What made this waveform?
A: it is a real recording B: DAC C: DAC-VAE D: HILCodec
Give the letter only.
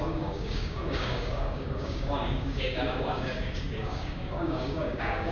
B